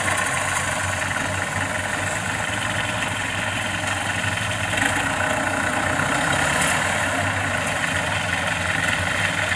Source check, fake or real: real